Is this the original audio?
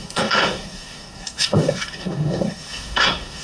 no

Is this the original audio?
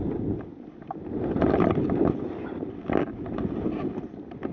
yes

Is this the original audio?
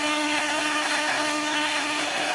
no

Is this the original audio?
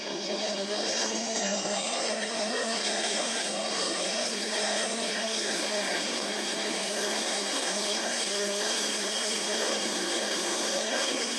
no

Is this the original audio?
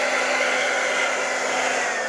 yes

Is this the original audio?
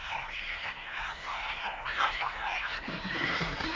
no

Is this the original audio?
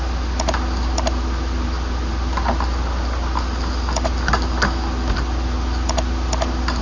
yes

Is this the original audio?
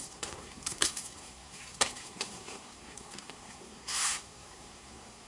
no